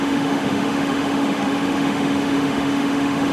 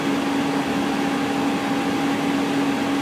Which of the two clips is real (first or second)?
second